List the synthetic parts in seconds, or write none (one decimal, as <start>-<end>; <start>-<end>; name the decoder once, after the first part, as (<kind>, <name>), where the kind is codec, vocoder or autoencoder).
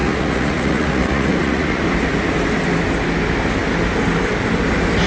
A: 0.0-1.8 (vocoder, Vocos)